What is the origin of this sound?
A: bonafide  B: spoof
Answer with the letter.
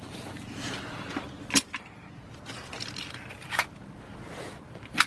A